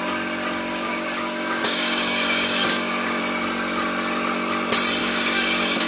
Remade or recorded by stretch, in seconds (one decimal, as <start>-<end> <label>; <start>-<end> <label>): 0.0-0.7 recorded; 0.7-3.2 remade; 3.2-5.0 recorded; 5.0-5.9 remade